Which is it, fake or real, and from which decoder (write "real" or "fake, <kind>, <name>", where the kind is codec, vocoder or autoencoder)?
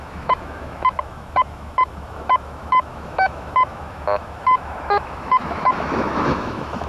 fake, autoencoder, DAC-VAE